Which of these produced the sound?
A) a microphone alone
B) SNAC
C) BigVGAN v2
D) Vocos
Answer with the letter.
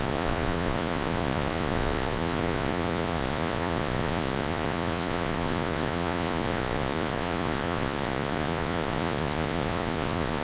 D